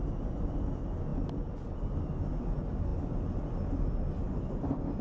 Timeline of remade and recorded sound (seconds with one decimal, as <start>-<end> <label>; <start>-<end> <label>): 0.0-5.0 recorded